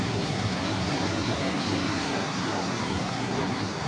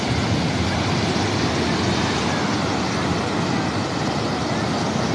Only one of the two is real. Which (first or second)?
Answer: second